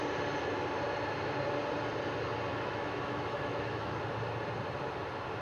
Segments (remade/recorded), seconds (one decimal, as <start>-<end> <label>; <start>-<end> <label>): 0.0-2.5 recorded; 2.5-4.0 remade; 4.0-5.4 recorded